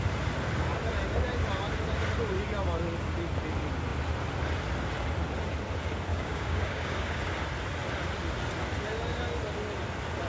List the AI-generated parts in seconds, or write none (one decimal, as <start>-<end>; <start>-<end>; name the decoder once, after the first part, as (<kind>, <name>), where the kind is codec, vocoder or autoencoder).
6.1-7.3 (codec, DAC)